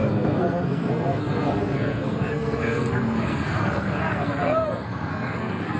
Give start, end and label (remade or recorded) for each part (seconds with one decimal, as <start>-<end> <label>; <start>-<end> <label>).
0.0-5.8 remade